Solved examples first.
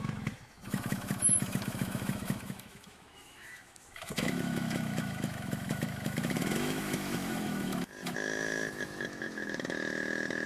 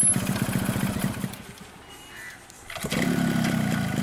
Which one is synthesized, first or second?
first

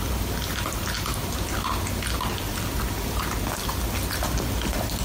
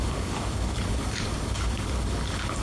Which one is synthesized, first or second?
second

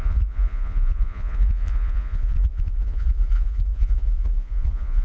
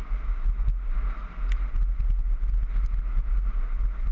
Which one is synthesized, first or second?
first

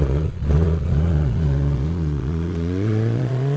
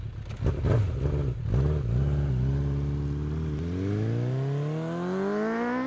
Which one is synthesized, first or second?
first